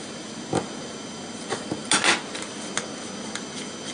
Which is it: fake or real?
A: real